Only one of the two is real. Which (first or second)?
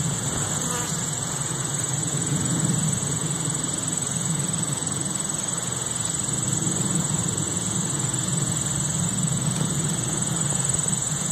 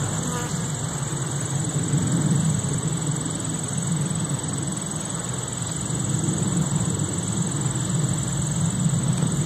second